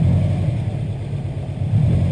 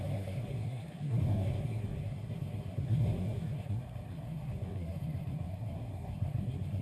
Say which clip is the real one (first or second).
first